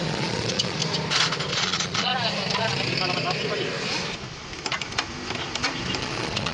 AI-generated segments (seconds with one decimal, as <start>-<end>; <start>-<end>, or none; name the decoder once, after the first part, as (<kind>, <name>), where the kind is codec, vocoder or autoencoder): 0.0-0.8 (vocoder, Vocos); 1.5-2.1; 6.0-6.5